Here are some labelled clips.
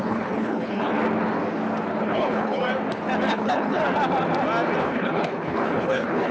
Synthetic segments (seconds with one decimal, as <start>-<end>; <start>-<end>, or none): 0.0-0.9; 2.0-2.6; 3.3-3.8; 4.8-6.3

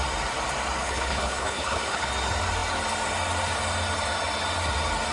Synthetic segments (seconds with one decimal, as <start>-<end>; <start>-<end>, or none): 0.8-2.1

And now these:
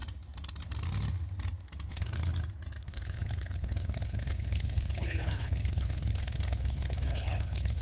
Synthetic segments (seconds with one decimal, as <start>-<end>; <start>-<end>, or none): 1.9-2.3; 2.8-7.8

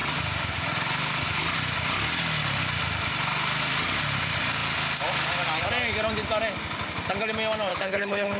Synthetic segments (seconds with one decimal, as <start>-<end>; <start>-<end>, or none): 7.7-8.4

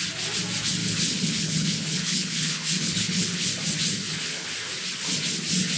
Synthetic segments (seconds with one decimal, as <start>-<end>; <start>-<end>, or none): 0.8-3.5; 4.0-4.5

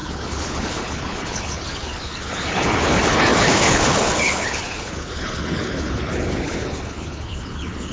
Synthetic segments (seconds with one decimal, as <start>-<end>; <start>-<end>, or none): 0.0-7.9